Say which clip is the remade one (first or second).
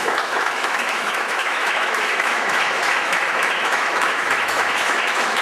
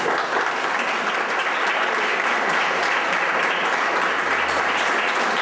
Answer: first